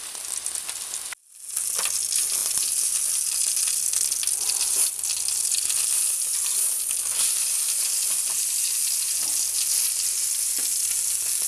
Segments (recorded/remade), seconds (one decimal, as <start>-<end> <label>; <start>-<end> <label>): 0.0-11.5 recorded